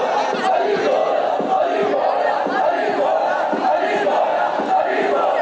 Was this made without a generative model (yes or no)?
yes